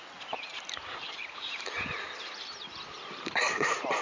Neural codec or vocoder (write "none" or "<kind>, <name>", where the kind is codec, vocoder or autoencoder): vocoder, BigVGAN v2